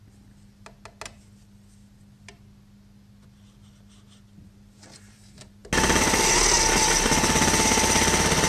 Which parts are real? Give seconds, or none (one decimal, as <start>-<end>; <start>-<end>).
0.0-8.5

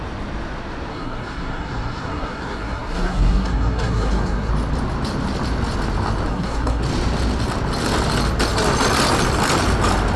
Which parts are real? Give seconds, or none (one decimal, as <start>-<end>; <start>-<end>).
0.0-0.9; 4.5-6.3; 6.8-10.2

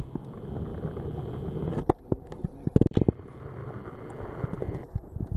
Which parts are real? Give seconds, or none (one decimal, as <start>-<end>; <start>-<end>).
0.0-5.4

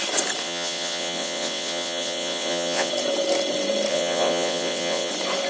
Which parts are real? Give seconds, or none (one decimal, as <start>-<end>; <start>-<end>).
0.0-0.4; 2.9-3.9; 5.1-5.5

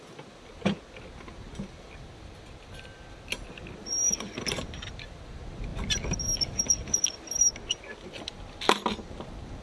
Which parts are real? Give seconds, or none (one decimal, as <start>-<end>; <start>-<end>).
0.0-9.6